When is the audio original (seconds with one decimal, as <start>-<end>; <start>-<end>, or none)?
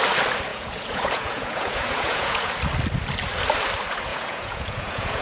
0.0-0.5; 2.6-4.1